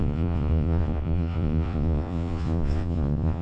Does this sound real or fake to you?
fake